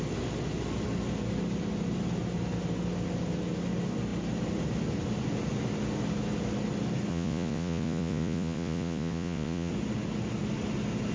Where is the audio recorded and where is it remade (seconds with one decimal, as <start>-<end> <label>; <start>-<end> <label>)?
0.0-7.1 recorded; 7.1-9.7 remade; 9.7-11.1 recorded